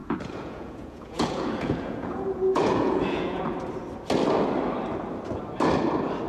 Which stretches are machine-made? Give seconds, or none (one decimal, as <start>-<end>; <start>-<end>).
0.0-3.4